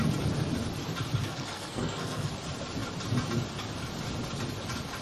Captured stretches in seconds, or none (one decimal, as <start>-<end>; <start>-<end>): 0.0-1.2; 2.3-5.0